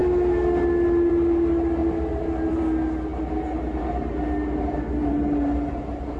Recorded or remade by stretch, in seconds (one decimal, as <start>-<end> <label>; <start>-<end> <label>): 0.0-1.8 recorded; 1.8-2.6 remade; 2.6-5.0 recorded; 5.0-6.2 remade